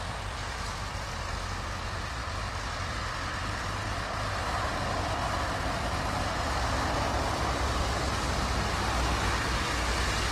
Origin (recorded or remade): recorded